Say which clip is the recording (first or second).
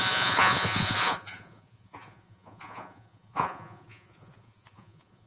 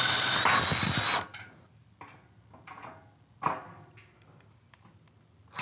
second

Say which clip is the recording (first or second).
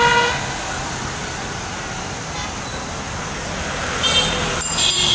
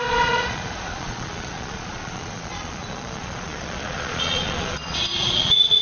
first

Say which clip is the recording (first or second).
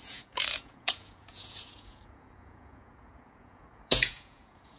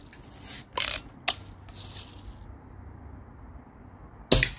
second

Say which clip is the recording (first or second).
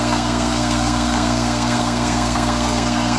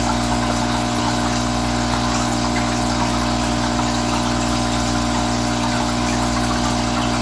second